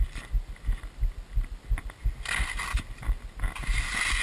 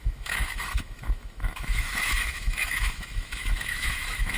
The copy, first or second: second